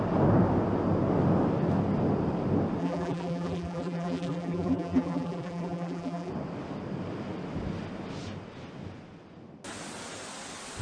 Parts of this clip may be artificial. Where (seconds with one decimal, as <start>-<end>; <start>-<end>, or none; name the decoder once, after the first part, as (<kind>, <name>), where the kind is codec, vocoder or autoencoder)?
2.8-6.3 (vocoder, BigVGAN v2)